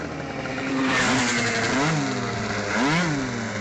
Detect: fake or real real